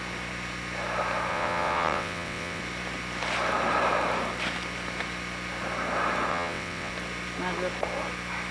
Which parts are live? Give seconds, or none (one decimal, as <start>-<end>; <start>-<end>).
0.0-1.3; 2.6-6.3; 6.9-8.5